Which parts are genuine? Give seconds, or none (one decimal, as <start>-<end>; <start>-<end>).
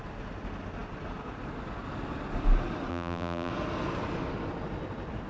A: 0.0-2.9; 3.5-5.3